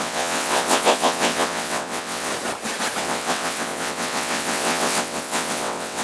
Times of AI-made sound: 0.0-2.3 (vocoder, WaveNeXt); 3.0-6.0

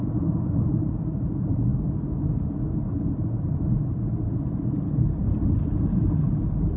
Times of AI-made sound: none

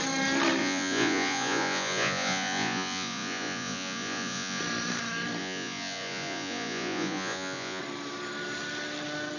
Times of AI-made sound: 0.6-4.6 (vocoder, Vocos); 5.4-7.8

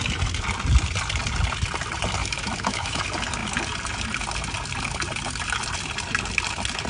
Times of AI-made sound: 2.2-3.0 (autoencoder, DAC-VAE)

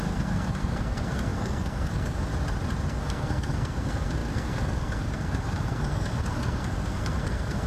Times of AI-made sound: 0.0-2.3 (codec, SNAC); 2.9-7.7

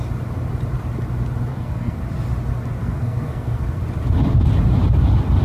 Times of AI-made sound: 1.5-2.0 (codec, SNAC); 2.8-3.8

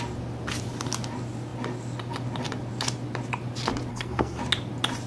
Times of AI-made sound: 3.9-4.4 (codec, SNAC)

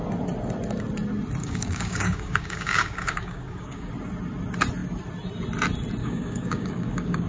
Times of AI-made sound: 1.4-3.9 (codec, DAC); 6.0-7.3